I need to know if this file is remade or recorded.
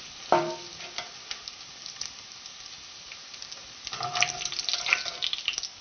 recorded